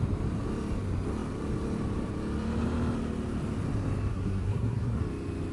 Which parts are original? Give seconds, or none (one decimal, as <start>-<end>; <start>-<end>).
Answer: 0.0-4.1; 5.0-5.5

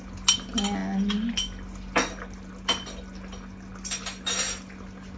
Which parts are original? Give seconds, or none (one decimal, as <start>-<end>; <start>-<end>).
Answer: 0.0-5.2